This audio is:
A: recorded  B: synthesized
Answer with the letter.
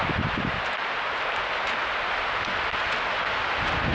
A